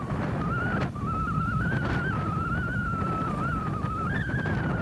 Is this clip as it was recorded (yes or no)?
no